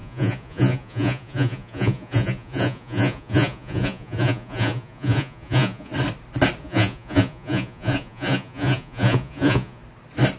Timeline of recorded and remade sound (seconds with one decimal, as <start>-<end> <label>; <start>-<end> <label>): 0.0-5.9 remade; 5.9-6.6 recorded; 6.6-9.8 remade; 9.8-10.4 recorded